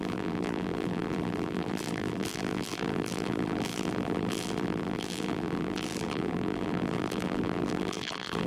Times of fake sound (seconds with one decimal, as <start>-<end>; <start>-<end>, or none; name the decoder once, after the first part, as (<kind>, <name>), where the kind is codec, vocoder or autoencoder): 0.0-8.5 (vocoder, BigVGAN v2)